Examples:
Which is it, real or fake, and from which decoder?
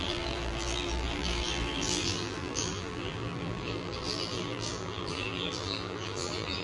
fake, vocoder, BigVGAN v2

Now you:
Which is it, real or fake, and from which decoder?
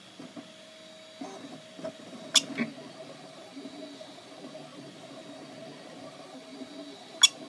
real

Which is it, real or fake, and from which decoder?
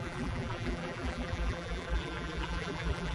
fake, vocoder, BigVGAN v2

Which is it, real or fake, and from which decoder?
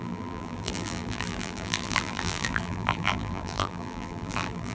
fake, vocoder, BigVGAN v2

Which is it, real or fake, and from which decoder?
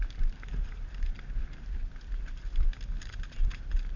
fake, vocoder, BigVGAN v2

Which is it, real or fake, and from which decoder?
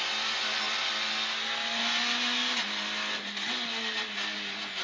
real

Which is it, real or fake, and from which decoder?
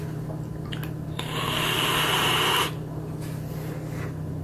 real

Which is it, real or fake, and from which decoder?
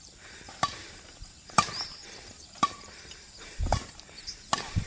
fake, vocoder, BigVGAN v2